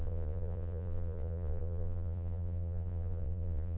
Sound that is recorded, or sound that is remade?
remade